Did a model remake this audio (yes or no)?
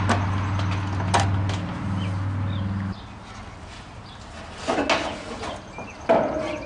no